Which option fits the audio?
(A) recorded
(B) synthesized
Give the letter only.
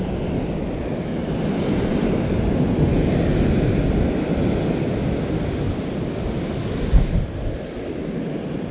A